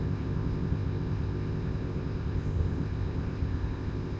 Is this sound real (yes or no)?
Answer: no